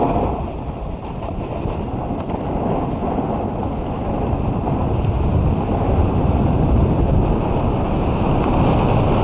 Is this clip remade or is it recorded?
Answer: recorded